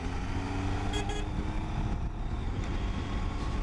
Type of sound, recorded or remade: recorded